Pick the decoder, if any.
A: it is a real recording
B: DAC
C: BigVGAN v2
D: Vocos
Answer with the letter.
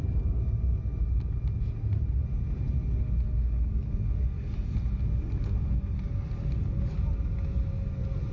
A